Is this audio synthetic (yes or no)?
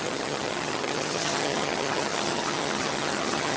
yes